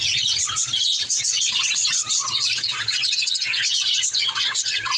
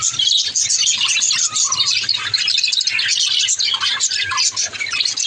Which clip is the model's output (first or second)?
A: first